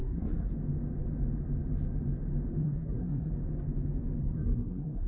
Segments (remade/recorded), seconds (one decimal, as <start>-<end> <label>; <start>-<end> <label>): 0.0-0.5 remade; 0.5-2.6 recorded; 2.6-3.3 remade; 3.3-4.2 recorded; 4.2-5.1 remade